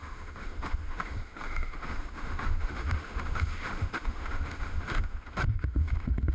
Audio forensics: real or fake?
fake